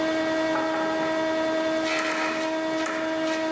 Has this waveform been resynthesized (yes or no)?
no